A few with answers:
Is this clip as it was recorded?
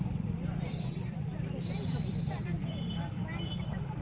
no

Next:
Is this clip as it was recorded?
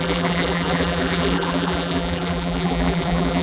no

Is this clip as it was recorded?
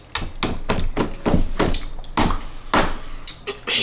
yes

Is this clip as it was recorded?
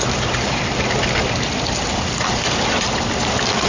yes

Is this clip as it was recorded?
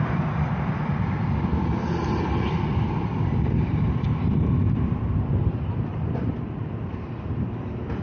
no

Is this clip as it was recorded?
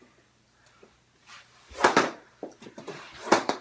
no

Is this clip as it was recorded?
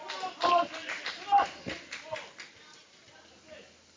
yes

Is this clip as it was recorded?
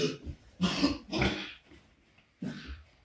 no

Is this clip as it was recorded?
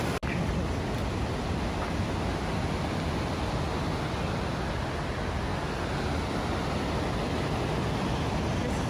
yes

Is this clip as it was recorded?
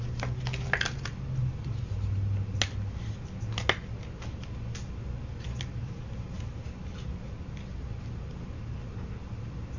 yes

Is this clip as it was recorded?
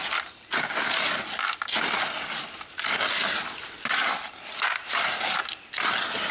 yes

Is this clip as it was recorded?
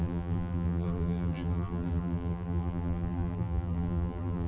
no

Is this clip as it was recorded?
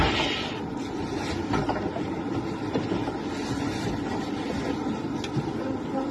yes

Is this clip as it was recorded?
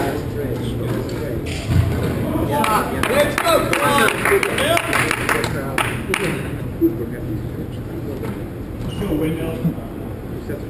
yes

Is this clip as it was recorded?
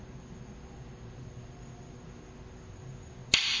yes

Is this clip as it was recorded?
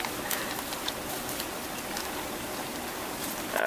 yes